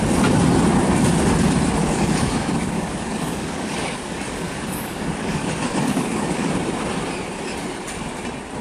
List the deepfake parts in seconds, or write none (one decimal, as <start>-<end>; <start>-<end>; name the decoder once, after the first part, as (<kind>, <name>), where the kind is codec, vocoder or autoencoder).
1.8-6.5 (codec, DAC)